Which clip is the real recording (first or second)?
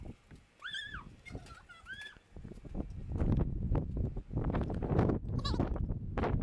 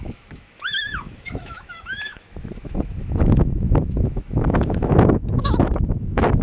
first